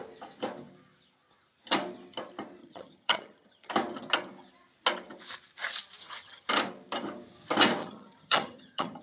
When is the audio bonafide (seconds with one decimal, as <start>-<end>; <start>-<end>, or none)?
0.0-2.6; 3.7-6.0; 6.5-7.8